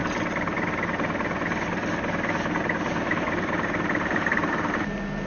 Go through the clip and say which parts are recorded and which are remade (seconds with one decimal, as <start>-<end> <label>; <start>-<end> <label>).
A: 0.0-5.3 recorded